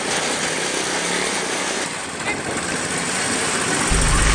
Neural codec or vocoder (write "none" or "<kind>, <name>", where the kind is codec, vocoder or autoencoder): none